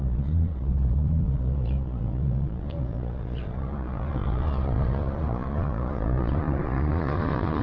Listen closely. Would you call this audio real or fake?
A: fake